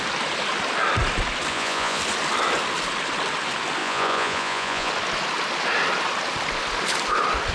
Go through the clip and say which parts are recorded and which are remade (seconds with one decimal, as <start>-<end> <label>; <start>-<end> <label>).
0.0-1.5 recorded; 1.5-2.0 remade; 2.0-3.8 recorded; 3.8-4.9 remade; 4.9-7.5 recorded